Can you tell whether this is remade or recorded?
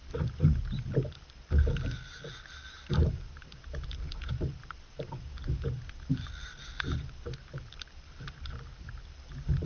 recorded